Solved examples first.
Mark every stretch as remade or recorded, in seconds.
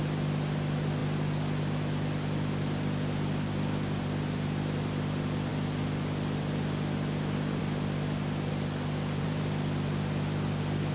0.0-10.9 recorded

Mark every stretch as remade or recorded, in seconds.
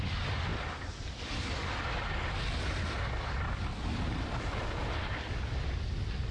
0.0-6.3 recorded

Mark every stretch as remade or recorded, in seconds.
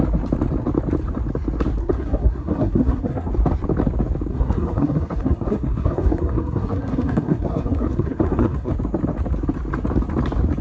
0.0-1.8 recorded; 1.8-3.3 remade; 3.3-4.3 recorded; 4.3-8.7 remade; 8.7-10.6 recorded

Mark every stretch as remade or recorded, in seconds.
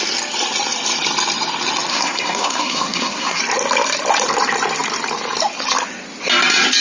0.0-1.9 recorded; 1.9-3.4 remade; 3.4-6.8 recorded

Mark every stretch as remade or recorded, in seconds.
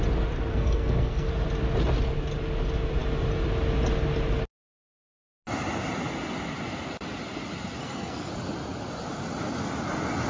0.0-0.5 recorded; 0.5-1.3 remade; 1.3-7.8 recorded; 7.8-8.3 remade; 8.3-10.3 recorded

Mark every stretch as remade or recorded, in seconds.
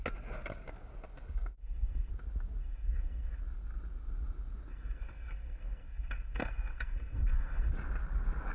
0.0-1.6 recorded; 1.6-2.1 remade; 2.1-2.6 recorded; 2.6-3.4 remade; 3.4-4.7 recorded; 4.7-7.7 remade; 7.7-8.5 recorded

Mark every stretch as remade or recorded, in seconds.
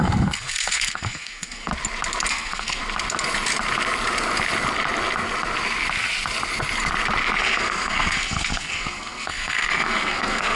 0.0-1.7 remade; 1.7-2.3 recorded; 2.3-2.8 remade; 2.8-7.4 recorded; 7.4-10.6 remade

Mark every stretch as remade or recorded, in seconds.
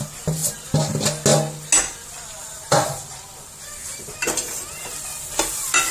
0.0-5.9 recorded